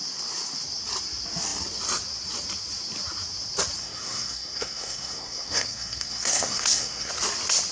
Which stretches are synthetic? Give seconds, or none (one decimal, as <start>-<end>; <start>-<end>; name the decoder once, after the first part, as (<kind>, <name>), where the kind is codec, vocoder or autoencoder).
3.8-7.1 (codec, SNAC)